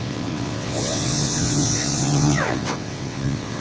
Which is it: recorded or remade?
remade